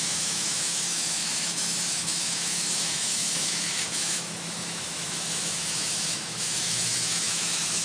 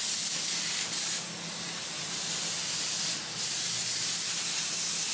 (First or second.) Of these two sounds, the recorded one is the second